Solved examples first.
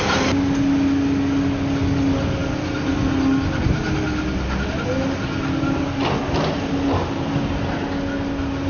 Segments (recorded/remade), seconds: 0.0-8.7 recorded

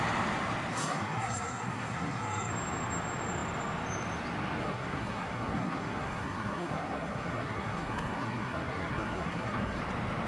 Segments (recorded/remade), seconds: 0.0-0.7 recorded; 0.7-2.5 remade; 2.5-4.6 recorded; 4.6-9.8 remade; 9.8-10.3 recorded

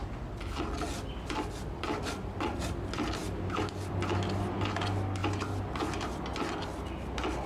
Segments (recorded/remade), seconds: 0.0-7.5 recorded